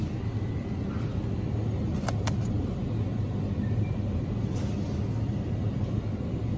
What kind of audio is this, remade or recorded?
recorded